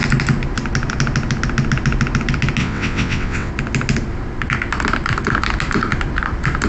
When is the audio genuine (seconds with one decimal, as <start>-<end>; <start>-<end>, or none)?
0.0-2.6; 3.5-6.7